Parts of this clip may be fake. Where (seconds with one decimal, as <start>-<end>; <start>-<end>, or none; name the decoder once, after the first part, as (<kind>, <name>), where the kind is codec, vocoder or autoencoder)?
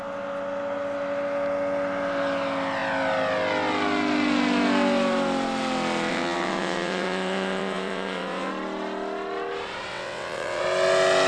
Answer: 6.1-8.5 (vocoder, WaveNeXt); 9.9-10.6